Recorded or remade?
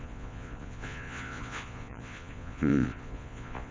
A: remade